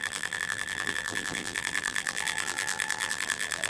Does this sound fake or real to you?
fake